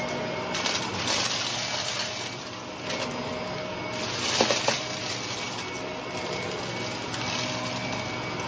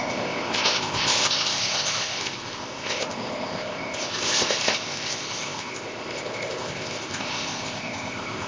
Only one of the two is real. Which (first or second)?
first